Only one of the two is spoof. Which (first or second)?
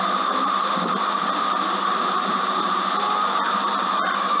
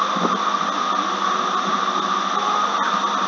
first